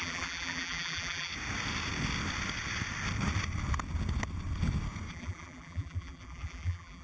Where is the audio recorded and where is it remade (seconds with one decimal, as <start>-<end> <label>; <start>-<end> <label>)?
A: 0.0-1.3 remade; 1.3-5.1 recorded; 5.1-7.0 remade